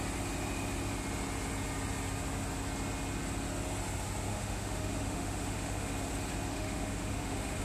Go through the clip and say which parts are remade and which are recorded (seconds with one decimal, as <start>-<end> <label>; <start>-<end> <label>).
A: 0.0-4.3 recorded; 4.3-5.9 remade; 5.9-6.5 recorded; 6.5-7.6 remade